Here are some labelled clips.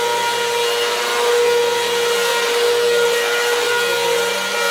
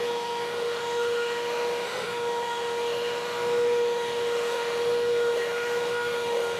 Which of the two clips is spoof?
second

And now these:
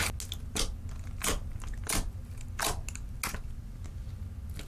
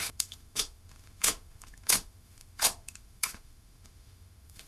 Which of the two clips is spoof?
second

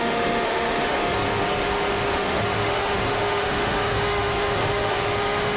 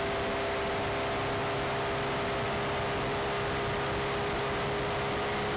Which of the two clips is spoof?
first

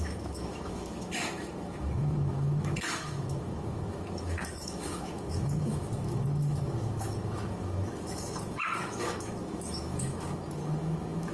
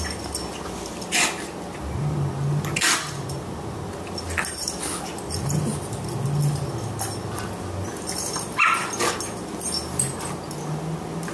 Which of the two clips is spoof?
first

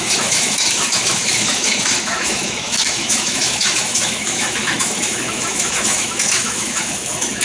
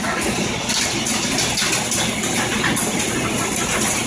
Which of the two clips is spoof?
first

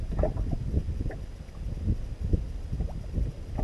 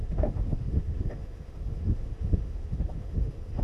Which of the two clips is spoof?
second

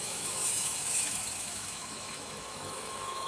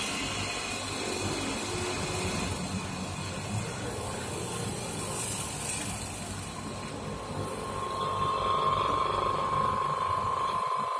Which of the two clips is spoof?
first